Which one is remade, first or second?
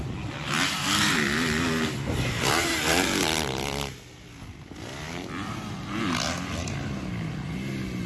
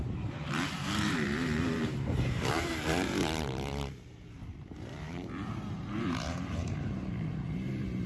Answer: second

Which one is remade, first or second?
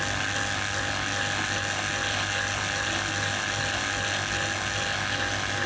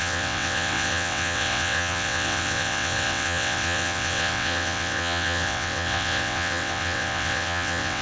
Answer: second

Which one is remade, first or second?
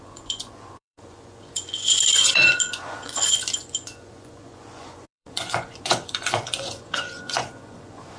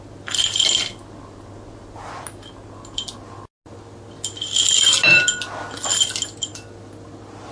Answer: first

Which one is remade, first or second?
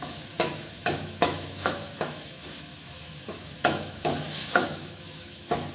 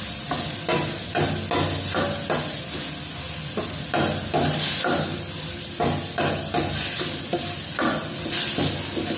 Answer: first